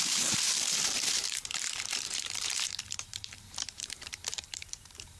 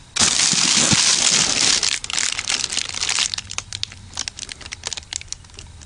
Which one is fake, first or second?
first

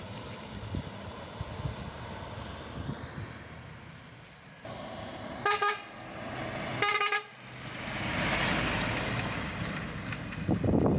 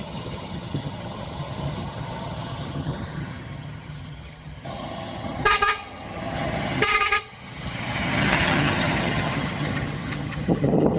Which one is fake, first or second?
second